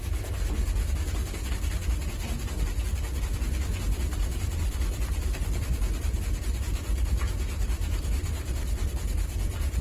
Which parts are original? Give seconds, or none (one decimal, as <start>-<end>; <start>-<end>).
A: 0.0-4.6; 8.9-9.8